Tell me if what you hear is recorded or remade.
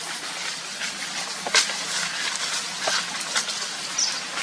recorded